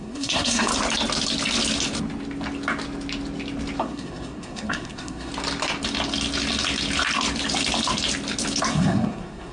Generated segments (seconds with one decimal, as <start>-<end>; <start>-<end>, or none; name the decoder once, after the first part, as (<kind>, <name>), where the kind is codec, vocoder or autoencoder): 0.0-0.7 (codec, SNAC); 3.8-5.3; 8.7-9.5